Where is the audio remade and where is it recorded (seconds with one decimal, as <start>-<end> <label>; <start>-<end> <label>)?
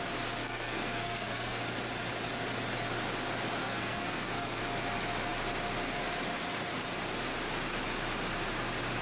0.0-0.4 recorded; 0.4-1.6 remade; 1.6-3.6 recorded; 3.6-4.6 remade; 4.6-9.0 recorded